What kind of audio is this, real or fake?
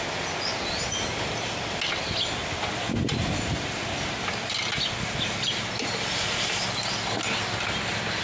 real